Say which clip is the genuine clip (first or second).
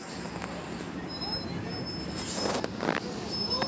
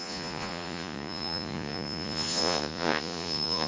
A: first